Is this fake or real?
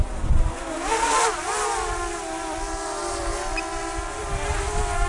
real